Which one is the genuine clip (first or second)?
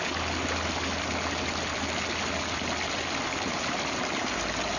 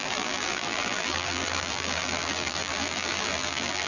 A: first